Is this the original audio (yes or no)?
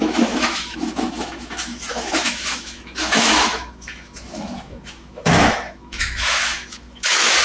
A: no